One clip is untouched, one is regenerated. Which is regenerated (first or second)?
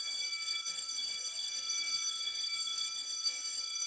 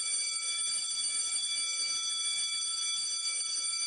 first